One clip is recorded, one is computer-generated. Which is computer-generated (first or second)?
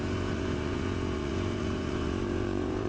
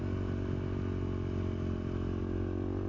first